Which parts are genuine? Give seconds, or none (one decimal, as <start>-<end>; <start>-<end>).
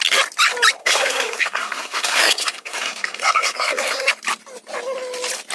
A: 0.0-0.8; 4.1-5.5